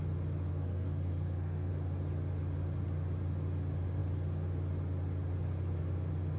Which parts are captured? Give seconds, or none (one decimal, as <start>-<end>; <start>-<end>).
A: 0.0-0.5; 1.7-6.4